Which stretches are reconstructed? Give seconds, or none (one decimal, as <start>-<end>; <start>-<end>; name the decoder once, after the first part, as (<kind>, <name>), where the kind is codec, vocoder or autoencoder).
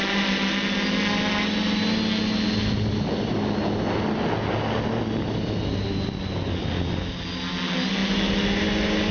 none